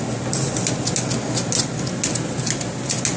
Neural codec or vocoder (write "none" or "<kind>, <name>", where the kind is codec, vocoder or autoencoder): none